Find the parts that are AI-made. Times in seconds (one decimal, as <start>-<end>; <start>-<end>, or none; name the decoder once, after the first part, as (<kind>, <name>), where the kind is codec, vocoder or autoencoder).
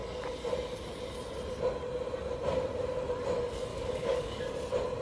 3.7-4.4 (codec, DAC)